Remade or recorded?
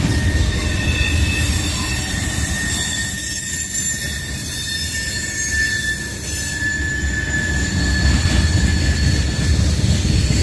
recorded